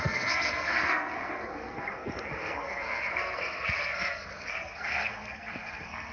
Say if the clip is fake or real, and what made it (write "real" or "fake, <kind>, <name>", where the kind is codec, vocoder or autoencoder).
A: fake, codec, SNAC